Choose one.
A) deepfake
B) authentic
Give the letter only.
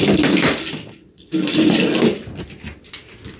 B